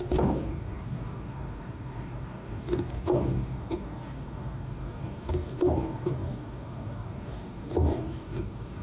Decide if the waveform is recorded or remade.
remade